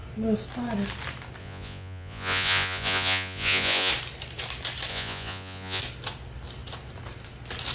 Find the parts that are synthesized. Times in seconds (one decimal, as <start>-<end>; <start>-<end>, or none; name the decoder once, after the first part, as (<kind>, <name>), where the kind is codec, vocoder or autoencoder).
1.4-3.9 (vocoder, Vocos); 4.9-5.8